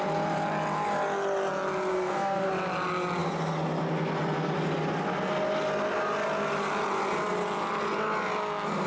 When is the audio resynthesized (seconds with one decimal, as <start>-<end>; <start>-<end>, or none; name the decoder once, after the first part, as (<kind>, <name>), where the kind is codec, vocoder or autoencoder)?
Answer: 1.9-2.5 (codec, SNAC)